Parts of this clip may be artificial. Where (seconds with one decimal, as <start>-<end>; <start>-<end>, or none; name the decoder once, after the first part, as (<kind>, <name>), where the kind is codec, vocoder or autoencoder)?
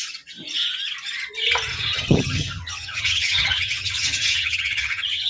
1.7-5.3 (vocoder, HiFi-GAN)